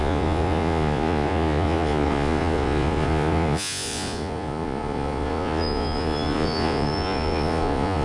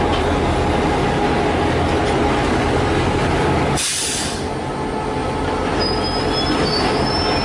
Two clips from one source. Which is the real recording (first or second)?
second